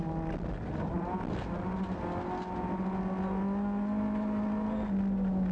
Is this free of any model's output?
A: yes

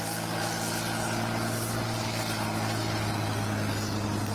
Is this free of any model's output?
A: yes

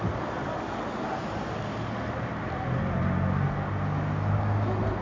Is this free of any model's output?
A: yes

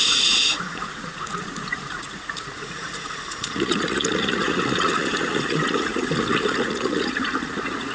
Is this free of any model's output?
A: no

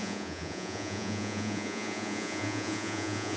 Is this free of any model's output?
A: no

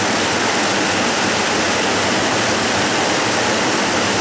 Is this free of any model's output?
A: yes